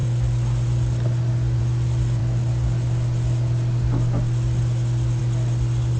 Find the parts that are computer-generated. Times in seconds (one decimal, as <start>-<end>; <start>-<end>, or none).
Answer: none